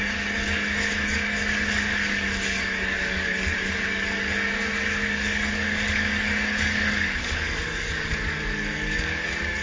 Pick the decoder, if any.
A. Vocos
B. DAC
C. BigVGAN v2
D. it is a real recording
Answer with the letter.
B